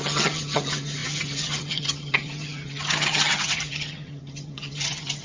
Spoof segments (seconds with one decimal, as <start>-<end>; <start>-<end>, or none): 0.0-5.2